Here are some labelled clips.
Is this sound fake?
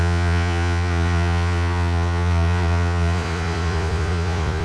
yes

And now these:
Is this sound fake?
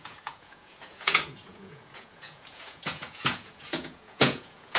yes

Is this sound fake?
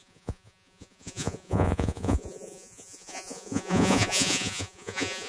yes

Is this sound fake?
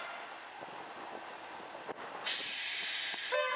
no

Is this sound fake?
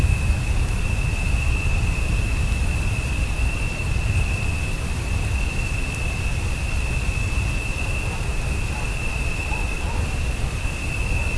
no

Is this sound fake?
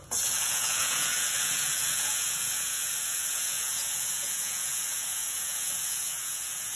yes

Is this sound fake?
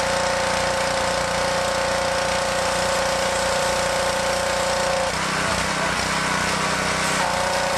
no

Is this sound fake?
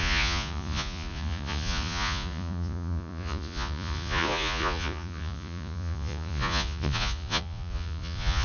yes